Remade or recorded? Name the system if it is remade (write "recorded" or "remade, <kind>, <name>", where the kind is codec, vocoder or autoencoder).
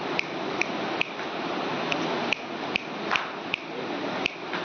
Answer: recorded